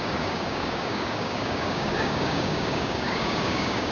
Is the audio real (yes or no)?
no